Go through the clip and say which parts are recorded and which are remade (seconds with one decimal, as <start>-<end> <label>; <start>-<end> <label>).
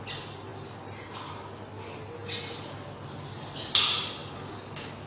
0.0-4.2 recorded; 4.2-5.1 remade